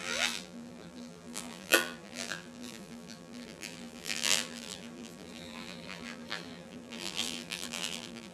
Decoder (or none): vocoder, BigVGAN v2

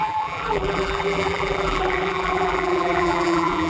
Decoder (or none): vocoder, BigVGAN v2